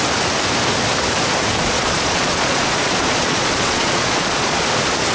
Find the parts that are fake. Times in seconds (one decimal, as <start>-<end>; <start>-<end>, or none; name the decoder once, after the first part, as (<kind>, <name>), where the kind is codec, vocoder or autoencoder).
1.5-4.6 (vocoder, Vocos)